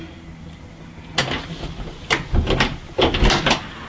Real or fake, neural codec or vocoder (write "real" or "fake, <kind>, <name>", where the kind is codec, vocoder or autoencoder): real